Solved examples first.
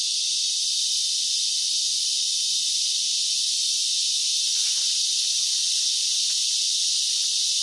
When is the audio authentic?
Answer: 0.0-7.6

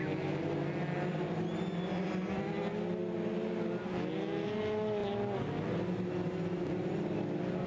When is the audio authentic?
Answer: 0.0-7.7